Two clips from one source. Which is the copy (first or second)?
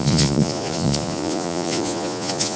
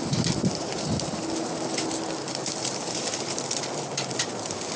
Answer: first